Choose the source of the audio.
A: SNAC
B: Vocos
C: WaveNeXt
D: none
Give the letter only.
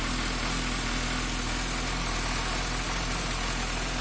D